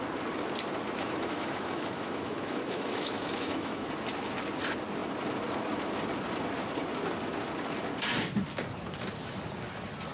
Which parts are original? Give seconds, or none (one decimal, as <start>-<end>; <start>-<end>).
0.0-1.0; 3.9-10.1